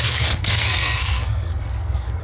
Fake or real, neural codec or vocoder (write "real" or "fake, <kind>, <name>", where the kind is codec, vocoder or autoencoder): fake, codec, SNAC